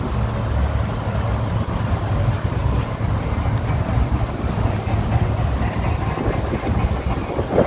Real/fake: real